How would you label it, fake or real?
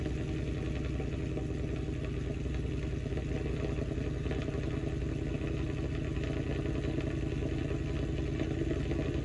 real